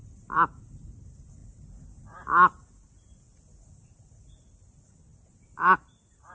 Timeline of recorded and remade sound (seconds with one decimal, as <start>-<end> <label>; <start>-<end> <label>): 0.0-6.3 recorded

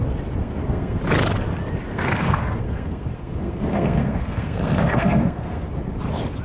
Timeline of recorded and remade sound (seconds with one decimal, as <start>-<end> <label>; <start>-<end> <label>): 0.0-0.4 recorded; 0.4-1.0 remade; 1.0-1.9 recorded; 1.9-5.7 remade; 5.7-6.4 recorded

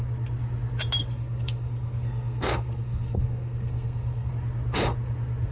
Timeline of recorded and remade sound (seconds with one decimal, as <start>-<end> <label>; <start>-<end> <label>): 0.0-1.0 recorded; 1.0-4.3 remade; 4.3-5.5 recorded

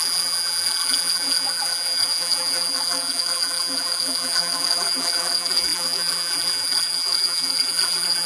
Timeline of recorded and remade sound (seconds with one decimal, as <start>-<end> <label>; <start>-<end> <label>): 0.0-8.3 remade

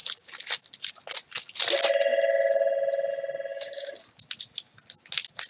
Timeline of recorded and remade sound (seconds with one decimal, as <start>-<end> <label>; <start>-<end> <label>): 0.0-3.5 recorded; 3.5-4.0 remade; 4.0-5.5 recorded